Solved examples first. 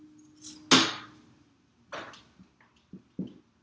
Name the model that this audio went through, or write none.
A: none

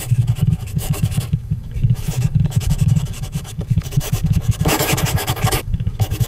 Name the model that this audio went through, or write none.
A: codec, DAC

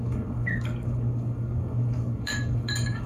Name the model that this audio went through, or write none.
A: codec, DAC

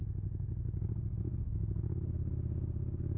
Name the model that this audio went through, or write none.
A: codec, DAC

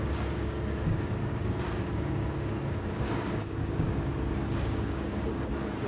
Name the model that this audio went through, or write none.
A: codec, DAC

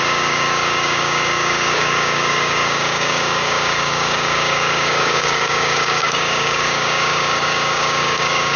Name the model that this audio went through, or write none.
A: codec, DAC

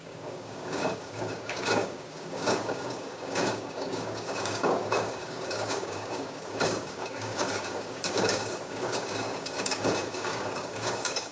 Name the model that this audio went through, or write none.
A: codec, DAC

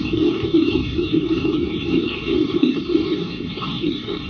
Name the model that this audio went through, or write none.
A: codec, DAC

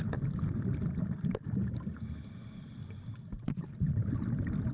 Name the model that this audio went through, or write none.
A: none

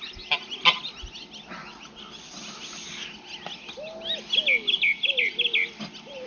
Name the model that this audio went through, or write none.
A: none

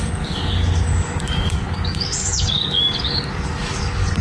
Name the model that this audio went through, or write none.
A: codec, DAC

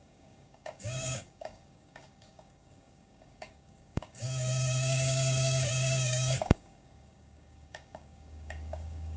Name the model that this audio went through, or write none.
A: codec, DAC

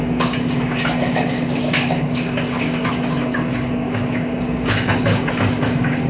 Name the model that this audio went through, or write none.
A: codec, DAC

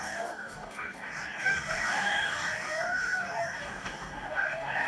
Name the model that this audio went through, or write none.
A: codec, DAC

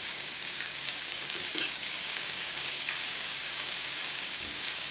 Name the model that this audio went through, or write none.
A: codec, DAC